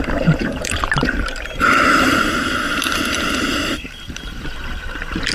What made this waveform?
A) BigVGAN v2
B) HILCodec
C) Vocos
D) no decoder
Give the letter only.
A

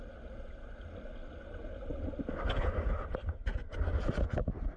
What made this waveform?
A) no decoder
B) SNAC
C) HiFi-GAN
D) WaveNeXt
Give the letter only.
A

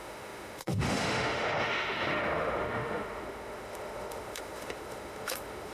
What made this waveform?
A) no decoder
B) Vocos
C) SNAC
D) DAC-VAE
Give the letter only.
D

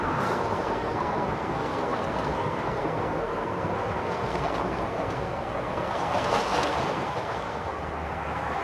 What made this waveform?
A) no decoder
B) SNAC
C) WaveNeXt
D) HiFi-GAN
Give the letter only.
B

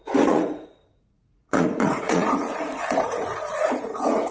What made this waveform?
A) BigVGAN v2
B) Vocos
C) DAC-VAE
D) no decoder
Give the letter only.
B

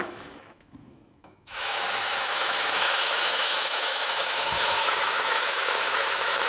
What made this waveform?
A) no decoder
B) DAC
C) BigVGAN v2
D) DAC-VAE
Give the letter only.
D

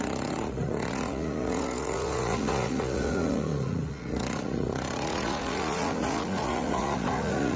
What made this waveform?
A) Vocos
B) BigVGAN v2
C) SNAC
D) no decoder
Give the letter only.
A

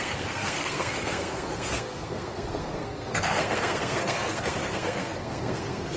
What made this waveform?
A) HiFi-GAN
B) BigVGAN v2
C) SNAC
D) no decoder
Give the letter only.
C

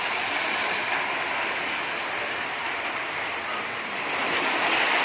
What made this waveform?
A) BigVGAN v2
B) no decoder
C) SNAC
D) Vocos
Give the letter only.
A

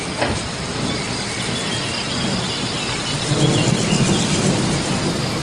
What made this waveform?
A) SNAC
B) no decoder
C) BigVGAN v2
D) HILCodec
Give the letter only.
B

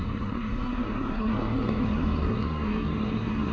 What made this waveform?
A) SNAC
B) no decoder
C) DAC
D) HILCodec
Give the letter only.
A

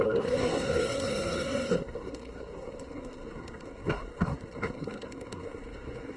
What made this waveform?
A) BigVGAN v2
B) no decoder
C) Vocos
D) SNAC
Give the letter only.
D